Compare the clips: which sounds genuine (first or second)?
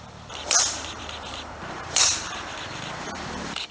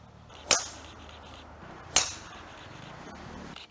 second